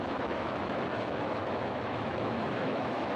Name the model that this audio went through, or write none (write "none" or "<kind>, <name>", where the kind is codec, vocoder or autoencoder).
autoencoder, DAC-VAE